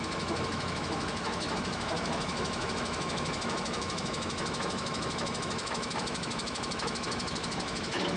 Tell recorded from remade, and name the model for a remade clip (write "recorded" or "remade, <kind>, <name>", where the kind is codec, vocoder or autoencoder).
remade, autoencoder, DAC-VAE